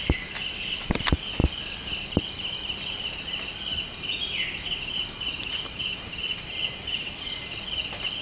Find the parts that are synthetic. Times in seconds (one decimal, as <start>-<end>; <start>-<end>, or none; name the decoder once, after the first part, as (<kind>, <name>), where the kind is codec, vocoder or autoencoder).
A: none